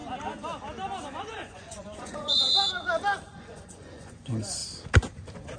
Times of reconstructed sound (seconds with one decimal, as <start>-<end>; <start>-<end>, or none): 1.2-2.5; 3.4-4.6